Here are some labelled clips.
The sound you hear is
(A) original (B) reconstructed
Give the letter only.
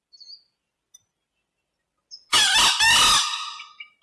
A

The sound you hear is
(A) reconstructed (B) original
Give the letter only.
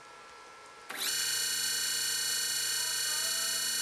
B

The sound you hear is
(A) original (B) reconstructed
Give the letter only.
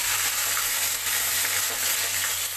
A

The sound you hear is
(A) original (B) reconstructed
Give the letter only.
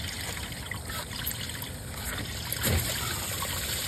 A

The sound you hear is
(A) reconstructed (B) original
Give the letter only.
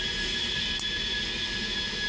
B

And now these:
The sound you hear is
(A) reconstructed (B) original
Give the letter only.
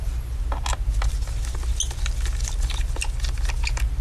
B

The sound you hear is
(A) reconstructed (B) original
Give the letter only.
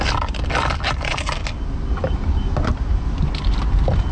A